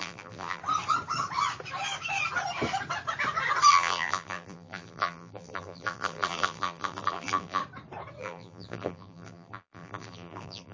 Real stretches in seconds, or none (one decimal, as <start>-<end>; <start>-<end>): 0.6-3.7; 7.6-8.2

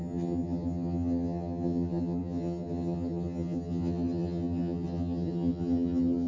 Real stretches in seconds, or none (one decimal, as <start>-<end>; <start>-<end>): none